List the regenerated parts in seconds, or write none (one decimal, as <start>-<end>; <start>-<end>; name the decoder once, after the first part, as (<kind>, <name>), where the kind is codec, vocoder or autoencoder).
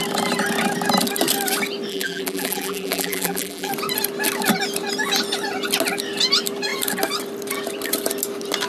1.9-3.7 (vocoder, BigVGAN v2)